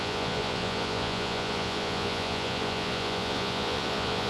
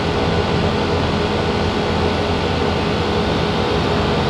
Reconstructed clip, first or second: first